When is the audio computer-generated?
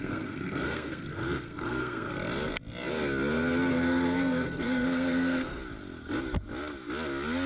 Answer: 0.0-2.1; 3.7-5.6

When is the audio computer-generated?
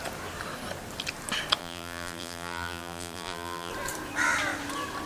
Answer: 1.6-3.7